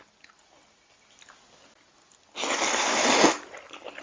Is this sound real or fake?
real